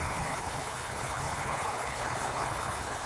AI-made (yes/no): yes